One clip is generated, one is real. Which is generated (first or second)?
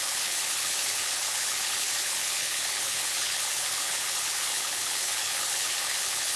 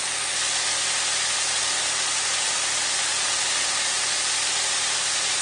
first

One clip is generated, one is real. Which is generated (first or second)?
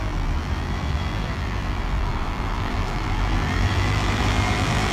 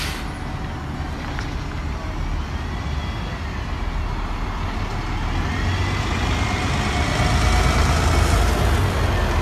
first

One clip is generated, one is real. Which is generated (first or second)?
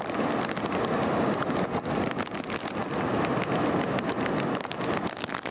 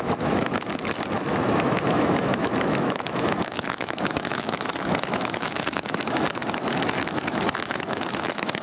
second